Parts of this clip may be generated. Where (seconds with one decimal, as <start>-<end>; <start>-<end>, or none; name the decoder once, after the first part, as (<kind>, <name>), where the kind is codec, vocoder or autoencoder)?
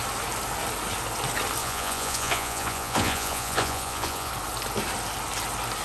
1.6-4.3 (vocoder, Vocos)